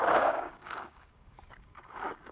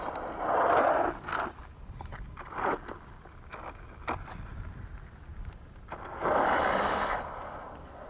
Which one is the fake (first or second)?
first